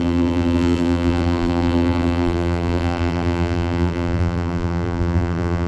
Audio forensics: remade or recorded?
remade